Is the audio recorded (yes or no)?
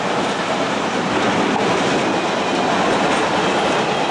yes